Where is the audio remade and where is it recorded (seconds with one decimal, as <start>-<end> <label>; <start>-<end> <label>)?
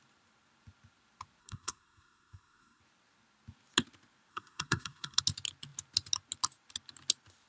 0.0-1.4 recorded; 1.4-2.8 remade; 2.8-4.3 recorded; 4.3-5.2 remade; 5.2-7.5 recorded